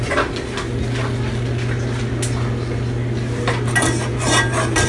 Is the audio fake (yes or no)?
no